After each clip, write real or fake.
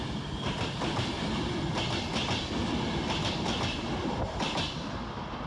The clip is real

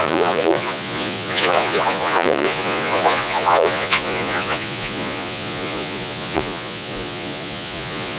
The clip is fake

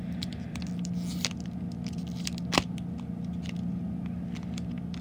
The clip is real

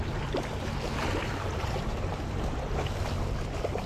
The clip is real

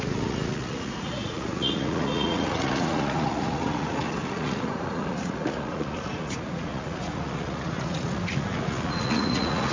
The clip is fake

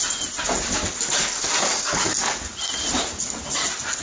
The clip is real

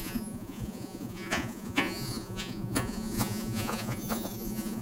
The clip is fake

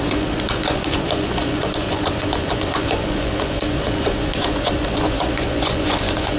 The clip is fake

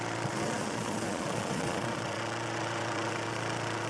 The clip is fake